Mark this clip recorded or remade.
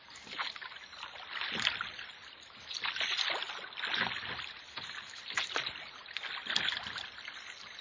recorded